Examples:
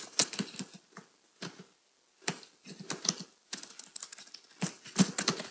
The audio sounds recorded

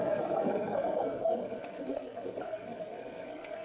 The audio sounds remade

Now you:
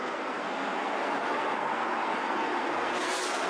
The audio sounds remade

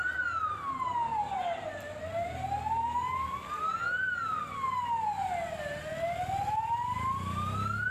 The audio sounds recorded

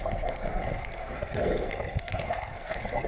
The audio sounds remade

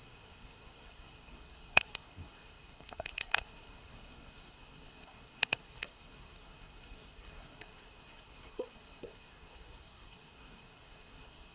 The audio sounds remade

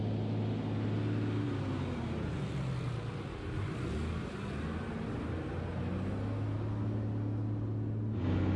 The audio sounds recorded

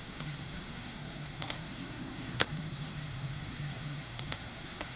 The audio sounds remade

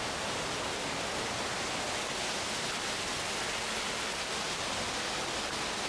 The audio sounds recorded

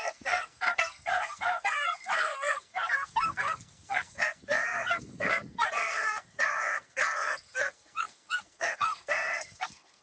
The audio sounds remade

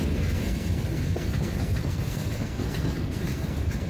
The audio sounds remade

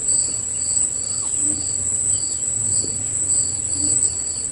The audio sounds recorded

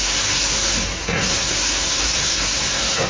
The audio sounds remade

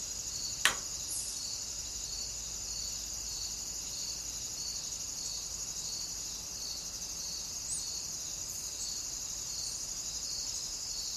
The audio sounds recorded